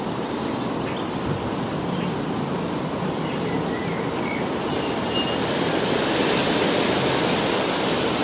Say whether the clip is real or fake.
real